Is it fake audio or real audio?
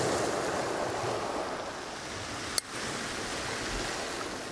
real